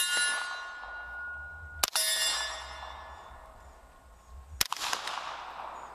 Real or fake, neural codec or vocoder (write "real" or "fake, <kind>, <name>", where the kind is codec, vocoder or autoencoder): real